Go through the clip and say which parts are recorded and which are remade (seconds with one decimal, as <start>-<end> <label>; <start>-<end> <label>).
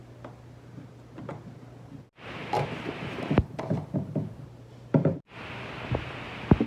0.0-1.3 recorded; 1.3-5.3 remade; 5.3-6.7 recorded